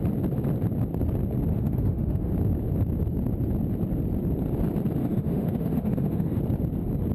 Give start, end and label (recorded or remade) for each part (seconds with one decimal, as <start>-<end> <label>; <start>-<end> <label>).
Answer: 0.0-1.5 recorded; 1.5-2.3 remade; 2.3-5.0 recorded; 5.0-6.4 remade; 6.4-7.1 recorded